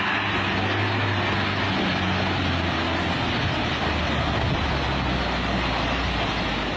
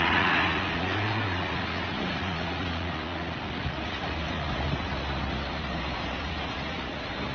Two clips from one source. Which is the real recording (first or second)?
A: first